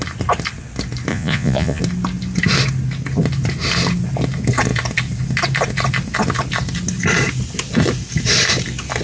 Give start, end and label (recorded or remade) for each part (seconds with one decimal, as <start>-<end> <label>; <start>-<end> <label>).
0.0-1.1 recorded; 1.1-1.8 remade; 1.8-9.0 recorded